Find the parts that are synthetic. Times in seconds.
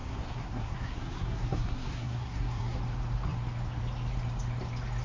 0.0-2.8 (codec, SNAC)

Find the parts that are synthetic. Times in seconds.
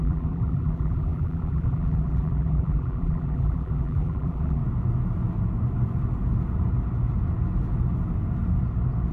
0.0-4.6 (vocoder, BigVGAN v2)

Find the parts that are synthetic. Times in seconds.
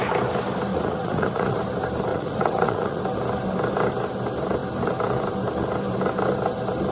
0.7-1.6 (vocoder, Vocos); 2.1-3.0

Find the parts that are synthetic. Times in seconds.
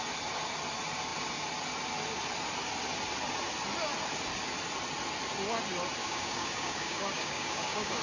6.0-8.0 (codec, DAC)